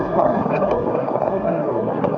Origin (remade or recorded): remade